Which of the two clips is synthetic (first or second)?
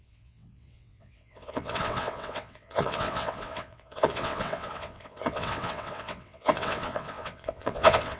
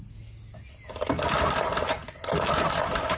first